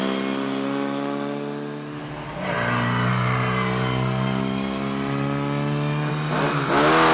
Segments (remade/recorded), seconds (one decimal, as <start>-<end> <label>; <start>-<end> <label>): 0.0-7.1 recorded